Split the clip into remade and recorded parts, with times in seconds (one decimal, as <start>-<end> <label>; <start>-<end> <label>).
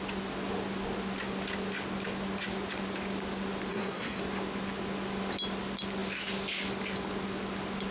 0.0-3.7 recorded; 3.7-4.2 remade; 4.2-7.9 recorded